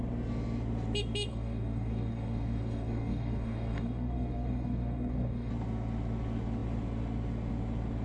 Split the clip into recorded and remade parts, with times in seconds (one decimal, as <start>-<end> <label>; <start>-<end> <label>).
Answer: 0.0-1.3 recorded; 1.3-5.5 remade; 5.5-8.0 recorded